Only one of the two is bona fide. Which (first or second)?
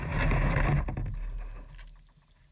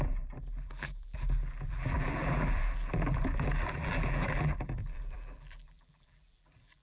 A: first